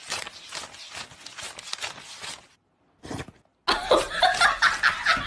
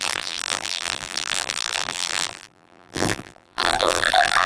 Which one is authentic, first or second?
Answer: first